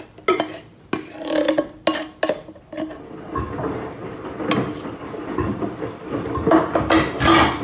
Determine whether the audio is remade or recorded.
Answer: recorded